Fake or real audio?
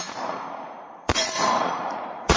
fake